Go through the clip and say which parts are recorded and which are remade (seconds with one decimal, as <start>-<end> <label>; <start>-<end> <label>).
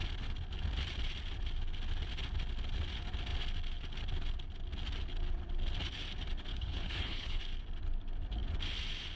0.0-6.5 recorded; 6.5-7.4 remade; 7.4-9.2 recorded